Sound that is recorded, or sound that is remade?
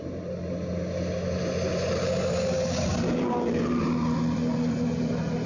recorded